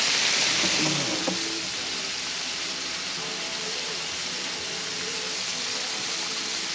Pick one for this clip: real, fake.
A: real